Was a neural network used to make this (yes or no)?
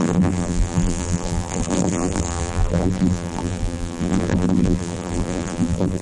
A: yes